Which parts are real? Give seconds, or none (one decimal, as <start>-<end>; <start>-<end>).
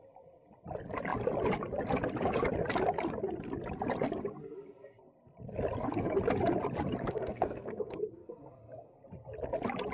0.0-7.0; 8.0-9.9